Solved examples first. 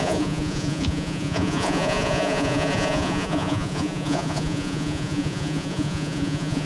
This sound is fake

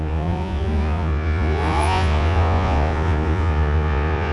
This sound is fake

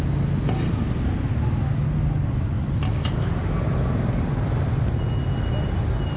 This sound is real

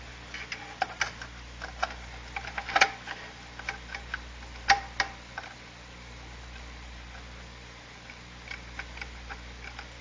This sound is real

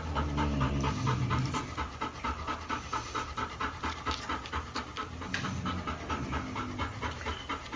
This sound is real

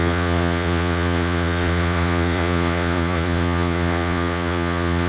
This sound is fake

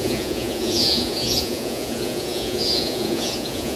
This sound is fake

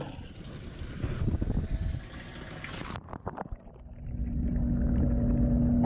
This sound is real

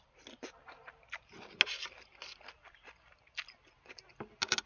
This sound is real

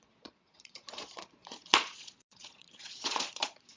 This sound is fake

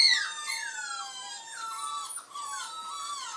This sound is real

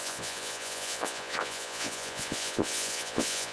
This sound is fake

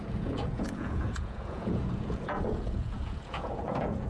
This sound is fake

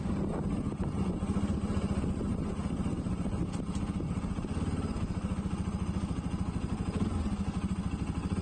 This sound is real